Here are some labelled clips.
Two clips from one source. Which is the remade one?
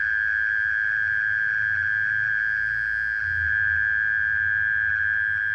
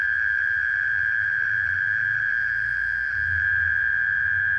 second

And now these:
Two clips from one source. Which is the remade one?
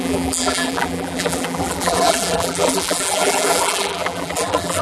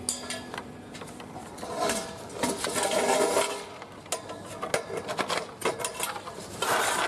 first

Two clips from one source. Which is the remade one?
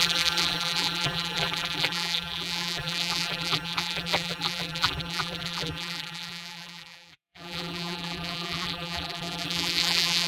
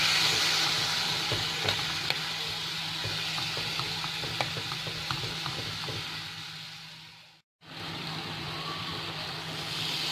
first